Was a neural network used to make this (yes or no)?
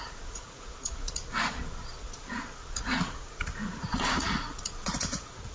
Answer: yes